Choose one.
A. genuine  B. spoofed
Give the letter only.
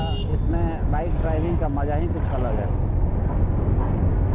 A